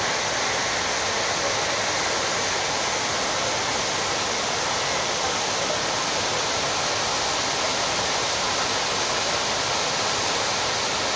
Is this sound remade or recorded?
recorded